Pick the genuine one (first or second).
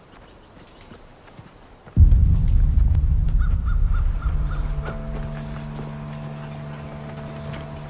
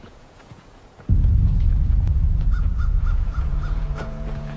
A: first